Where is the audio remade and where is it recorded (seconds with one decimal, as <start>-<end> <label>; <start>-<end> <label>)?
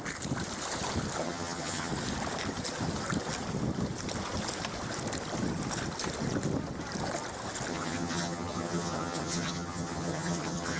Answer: 0.0-1.2 recorded; 1.2-1.9 remade; 1.9-7.7 recorded; 7.7-10.8 remade